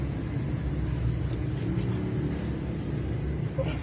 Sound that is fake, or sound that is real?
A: real